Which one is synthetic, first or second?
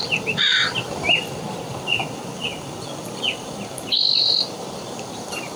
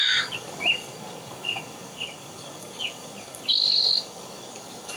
second